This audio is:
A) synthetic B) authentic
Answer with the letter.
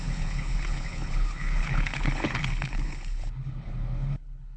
A